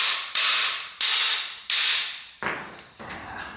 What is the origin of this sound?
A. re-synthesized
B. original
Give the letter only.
B